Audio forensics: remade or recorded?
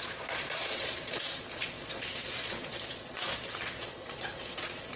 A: remade